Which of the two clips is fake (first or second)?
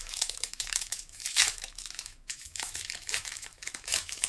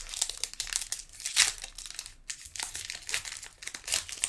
first